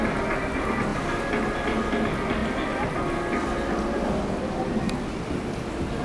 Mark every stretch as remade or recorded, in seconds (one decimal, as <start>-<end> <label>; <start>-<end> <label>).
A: 0.0-6.0 recorded